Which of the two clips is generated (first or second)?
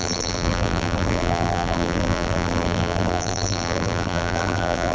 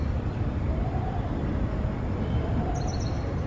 first